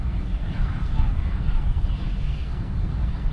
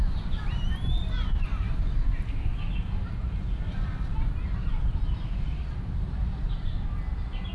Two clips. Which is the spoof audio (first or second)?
first